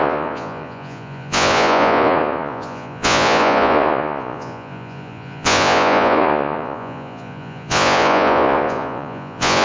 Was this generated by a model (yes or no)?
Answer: yes